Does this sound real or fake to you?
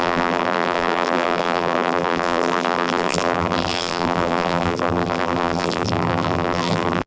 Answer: fake